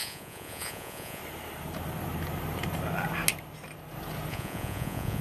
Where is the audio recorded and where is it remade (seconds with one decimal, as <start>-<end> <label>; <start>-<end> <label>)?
0.0-1.2 remade; 1.2-4.3 recorded; 4.3-5.2 remade